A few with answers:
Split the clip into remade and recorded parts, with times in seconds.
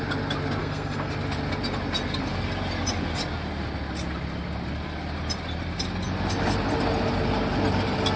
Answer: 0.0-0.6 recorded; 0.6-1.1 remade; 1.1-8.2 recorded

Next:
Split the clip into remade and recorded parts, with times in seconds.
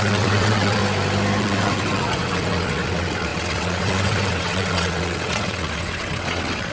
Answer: 0.0-0.8 remade; 0.8-1.4 recorded; 1.4-6.7 remade